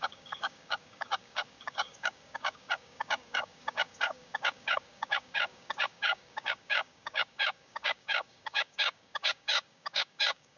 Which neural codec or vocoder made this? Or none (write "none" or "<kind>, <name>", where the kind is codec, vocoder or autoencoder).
codec, DAC